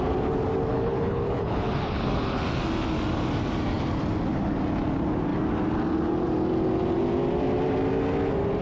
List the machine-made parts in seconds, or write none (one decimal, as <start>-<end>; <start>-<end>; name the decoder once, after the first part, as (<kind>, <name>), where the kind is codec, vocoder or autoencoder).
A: 0.7-2.4 (codec, HILCodec)